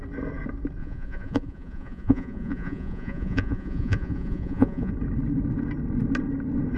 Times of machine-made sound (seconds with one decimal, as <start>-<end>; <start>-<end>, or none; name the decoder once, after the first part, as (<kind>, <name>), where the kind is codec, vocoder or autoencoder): 0.8-4.9 (vocoder, Vocos)